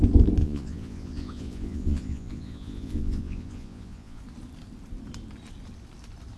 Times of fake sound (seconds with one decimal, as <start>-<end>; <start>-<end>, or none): 0.4-4.2